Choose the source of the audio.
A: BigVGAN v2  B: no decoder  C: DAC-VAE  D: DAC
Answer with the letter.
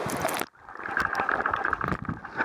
B